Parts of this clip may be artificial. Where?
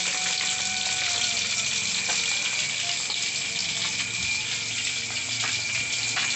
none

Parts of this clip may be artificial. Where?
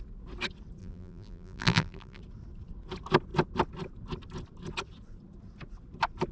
0.8-2.2 (vocoder, BigVGAN v2)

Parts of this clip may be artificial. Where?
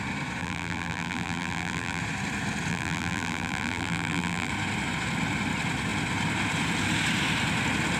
0.4-2.0 (vocoder, BigVGAN v2); 2.7-4.5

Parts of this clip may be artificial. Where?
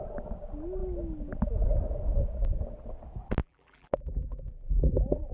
3.4-5.3 (vocoder, BigVGAN v2)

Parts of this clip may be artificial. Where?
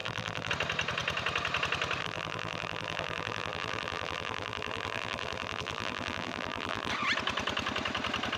0.0-0.5 (vocoder, BigVGAN v2); 2.0-6.9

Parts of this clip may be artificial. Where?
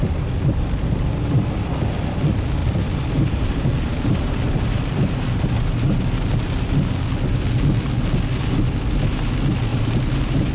2.6-5.4 (vocoder, BigVGAN v2); 9.7-10.5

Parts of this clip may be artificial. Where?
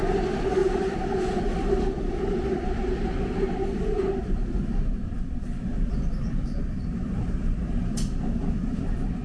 0.0-7.8 (vocoder, BigVGAN v2); 8.5-9.2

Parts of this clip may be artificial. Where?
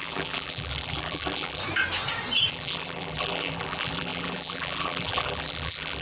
0.0-1.6 (vocoder, BigVGAN v2); 2.5-6.0